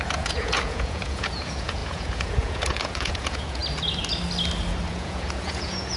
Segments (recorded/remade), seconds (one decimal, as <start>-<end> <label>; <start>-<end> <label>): 0.0-3.6 remade; 3.6-4.9 recorded; 4.9-6.0 remade